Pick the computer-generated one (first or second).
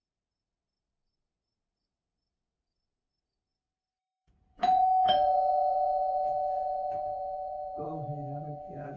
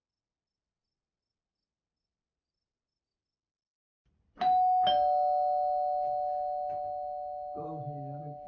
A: first